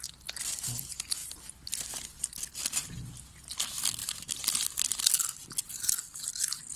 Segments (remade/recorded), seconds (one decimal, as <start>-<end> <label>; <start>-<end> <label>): 0.0-4.0 recorded; 4.0-5.1 remade; 5.1-6.8 recorded